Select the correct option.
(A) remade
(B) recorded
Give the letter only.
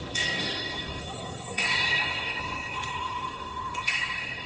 A